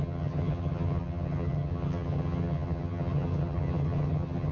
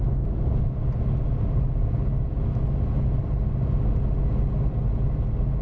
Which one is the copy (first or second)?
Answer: first